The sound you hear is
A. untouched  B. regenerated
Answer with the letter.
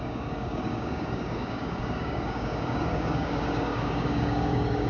B